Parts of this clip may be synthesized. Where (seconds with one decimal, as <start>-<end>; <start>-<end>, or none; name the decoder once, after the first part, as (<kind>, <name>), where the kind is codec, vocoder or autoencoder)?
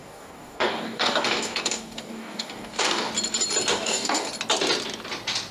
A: 0.0-3.1 (codec, DAC); 3.7-4.3